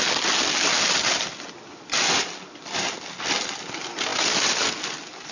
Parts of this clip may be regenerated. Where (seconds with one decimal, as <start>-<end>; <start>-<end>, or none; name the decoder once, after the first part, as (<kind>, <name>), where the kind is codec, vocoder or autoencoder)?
none

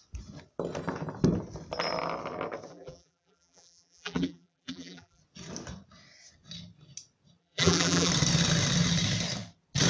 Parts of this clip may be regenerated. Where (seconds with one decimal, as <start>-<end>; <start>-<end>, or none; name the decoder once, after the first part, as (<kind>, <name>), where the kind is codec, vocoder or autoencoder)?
2.7-5.2 (vocoder, BigVGAN v2); 7.4-8.1

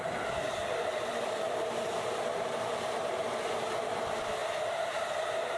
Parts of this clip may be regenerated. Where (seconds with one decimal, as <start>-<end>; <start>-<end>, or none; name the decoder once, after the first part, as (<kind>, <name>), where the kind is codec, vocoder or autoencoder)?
0.6-4.0 (vocoder, BigVGAN v2)

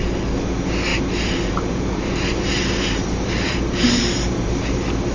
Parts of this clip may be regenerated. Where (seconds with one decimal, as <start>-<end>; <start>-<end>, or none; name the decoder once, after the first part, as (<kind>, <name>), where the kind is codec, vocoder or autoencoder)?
0.9-4.0 (vocoder, BigVGAN v2)

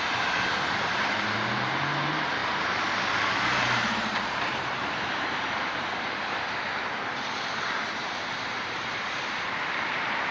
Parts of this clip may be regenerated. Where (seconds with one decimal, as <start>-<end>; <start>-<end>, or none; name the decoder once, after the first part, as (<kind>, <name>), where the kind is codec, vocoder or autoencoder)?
0.0-2.4 (vocoder, BigVGAN v2); 3.1-10.3

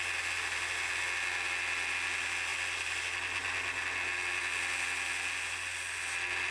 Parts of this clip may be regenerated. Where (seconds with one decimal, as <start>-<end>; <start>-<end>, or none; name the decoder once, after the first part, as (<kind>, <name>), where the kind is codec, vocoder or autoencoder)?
2.5-3.0 (vocoder, BigVGAN v2)

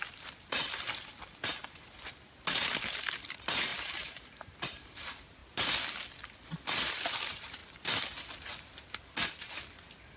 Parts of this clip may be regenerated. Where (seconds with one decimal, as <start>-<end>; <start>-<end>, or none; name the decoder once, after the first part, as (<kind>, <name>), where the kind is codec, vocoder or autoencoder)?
3.7-4.9 (vocoder, BigVGAN v2)

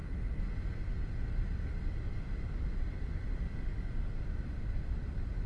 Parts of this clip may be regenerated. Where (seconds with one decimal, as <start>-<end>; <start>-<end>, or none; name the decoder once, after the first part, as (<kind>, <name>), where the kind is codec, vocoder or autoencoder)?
none